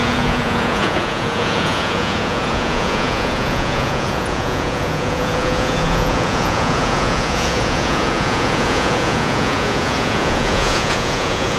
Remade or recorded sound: remade